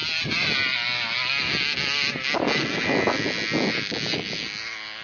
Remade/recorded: recorded